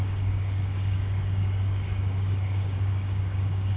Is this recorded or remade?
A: remade